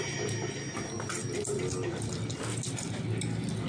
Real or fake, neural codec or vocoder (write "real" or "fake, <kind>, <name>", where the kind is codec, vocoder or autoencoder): real